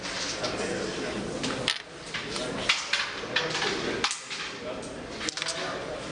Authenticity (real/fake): real